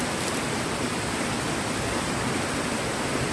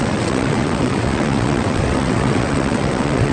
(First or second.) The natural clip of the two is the first